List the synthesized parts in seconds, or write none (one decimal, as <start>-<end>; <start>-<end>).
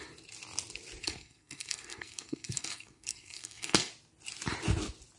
1.0-3.9